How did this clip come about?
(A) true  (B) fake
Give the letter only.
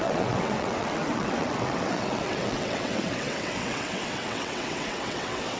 B